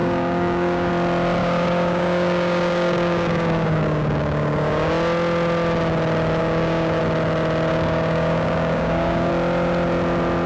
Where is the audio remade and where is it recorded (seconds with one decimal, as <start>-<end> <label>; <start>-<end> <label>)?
0.0-0.9 remade; 0.9-1.4 recorded; 1.4-4.9 remade; 4.9-6.4 recorded; 6.4-7.0 remade; 7.0-7.7 recorded; 7.7-9.3 remade; 9.3-10.5 recorded